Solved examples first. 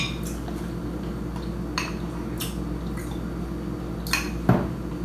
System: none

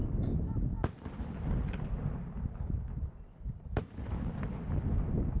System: none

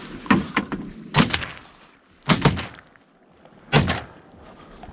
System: none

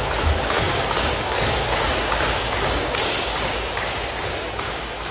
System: codec, DAC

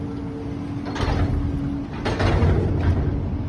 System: none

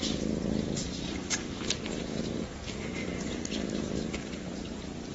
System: none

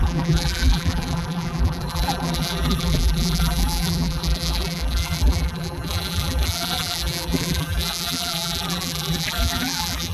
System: vocoder, BigVGAN v2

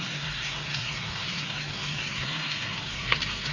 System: codec, SNAC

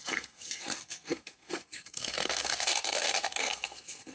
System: codec, SNAC